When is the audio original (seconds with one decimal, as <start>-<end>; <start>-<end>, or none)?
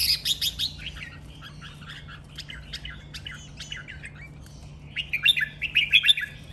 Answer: 0.0-6.5